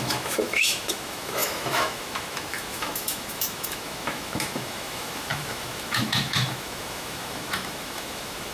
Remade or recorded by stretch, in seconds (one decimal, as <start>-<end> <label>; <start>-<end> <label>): 0.0-8.5 remade